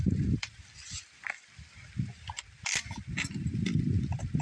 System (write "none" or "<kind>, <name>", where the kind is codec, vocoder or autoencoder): vocoder, BigVGAN v2